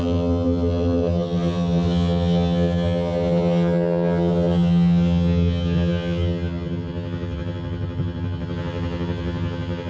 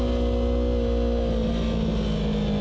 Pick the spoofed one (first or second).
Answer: first